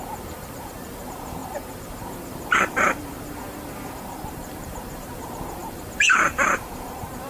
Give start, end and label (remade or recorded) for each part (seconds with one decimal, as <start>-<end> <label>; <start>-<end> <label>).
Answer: 0.0-7.3 remade